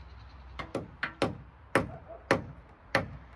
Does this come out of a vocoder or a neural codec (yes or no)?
no